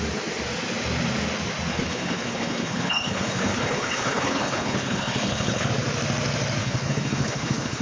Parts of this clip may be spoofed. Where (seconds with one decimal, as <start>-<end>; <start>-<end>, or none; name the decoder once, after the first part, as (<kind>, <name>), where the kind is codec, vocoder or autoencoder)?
1.7-5.7 (codec, HILCodec); 6.6-7.8